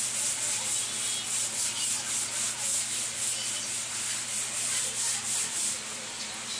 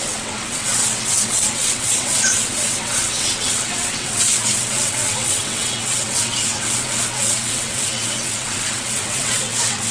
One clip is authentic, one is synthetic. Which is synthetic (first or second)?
second